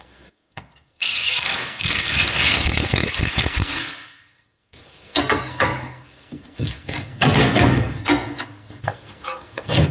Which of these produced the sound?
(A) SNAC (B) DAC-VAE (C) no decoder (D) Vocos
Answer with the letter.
A